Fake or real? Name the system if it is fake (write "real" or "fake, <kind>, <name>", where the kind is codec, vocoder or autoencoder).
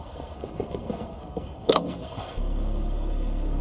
fake, codec, SNAC